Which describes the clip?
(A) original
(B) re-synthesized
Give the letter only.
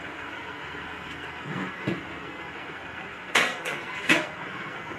B